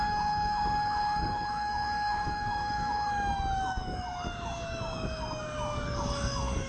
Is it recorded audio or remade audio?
remade